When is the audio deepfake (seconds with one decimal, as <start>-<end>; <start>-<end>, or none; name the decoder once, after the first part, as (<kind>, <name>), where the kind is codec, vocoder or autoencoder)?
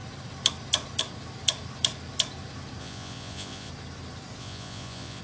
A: 2.8-3.7 (vocoder, Vocos); 4.4-5.2